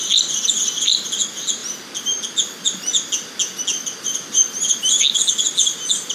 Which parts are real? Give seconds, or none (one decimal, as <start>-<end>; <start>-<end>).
0.0-6.1